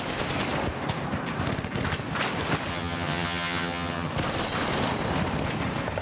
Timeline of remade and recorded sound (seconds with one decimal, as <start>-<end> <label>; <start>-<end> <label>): 0.0-2.7 recorded; 2.7-4.1 remade; 4.1-6.0 recorded

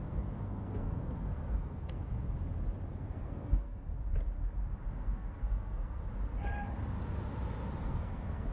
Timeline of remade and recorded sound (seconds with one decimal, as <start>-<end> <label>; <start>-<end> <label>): 0.0-2.1 remade; 2.1-2.9 recorded; 2.9-3.9 remade; 3.9-4.9 recorded; 4.9-6.0 remade; 6.0-7.8 recorded; 7.8-8.5 remade

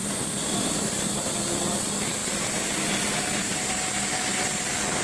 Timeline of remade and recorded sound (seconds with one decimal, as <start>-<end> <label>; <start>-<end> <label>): 0.0-1.3 remade; 1.3-2.2 recorded; 2.2-4.3 remade; 4.3-5.0 recorded

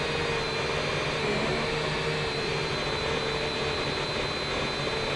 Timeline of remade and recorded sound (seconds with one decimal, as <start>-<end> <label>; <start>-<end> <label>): 0.0-1.5 recorded; 1.5-4.1 remade; 4.1-5.2 recorded